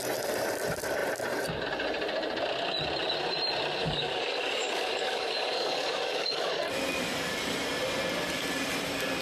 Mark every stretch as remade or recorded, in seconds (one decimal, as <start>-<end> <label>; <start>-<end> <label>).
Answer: 0.0-3.8 recorded; 3.8-6.5 remade; 6.5-9.2 recorded